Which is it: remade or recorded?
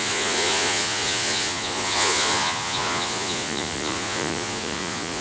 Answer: remade